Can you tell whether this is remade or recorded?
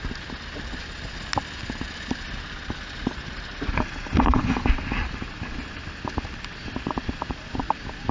recorded